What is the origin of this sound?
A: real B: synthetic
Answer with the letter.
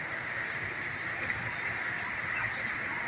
A